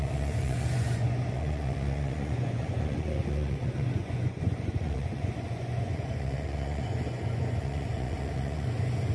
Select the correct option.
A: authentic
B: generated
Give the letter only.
B